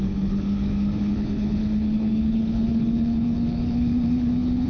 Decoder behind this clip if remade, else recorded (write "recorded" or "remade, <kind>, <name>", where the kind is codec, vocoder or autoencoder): remade, codec, HILCodec